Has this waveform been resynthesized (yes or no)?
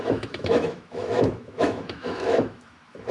yes